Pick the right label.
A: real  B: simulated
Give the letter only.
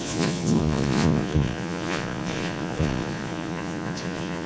B